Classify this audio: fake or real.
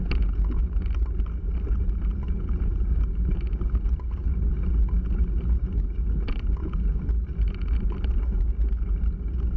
real